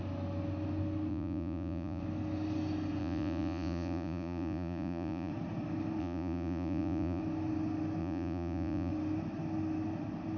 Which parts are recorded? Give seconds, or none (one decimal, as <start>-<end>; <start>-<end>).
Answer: 0.0-1.1; 2.0-3.0; 5.3-6.0; 7.2-8.0; 8.9-10.4